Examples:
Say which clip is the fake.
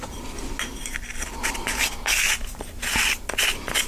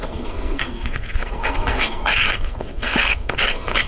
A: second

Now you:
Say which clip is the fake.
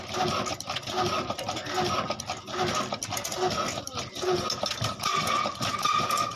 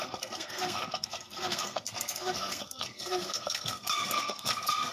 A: second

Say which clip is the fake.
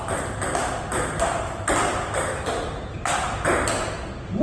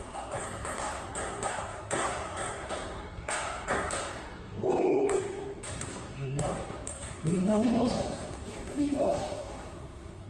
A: second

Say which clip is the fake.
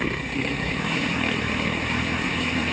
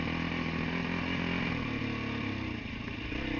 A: first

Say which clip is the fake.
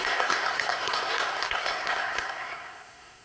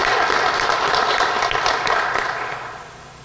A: first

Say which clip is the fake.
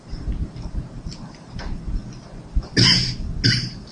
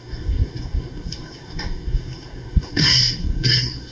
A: second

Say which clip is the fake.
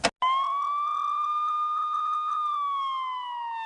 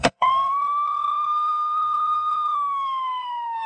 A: second